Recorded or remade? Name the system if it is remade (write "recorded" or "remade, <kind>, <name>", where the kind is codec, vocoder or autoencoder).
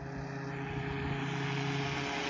recorded